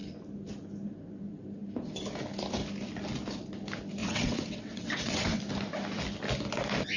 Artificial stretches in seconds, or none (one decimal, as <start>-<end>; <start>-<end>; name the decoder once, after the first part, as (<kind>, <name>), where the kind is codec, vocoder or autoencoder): 4.0-5.4 (vocoder, WaveNeXt)